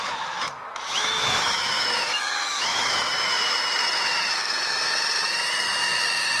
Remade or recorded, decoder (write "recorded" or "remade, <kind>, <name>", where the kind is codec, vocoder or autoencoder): remade, autoencoder, DAC-VAE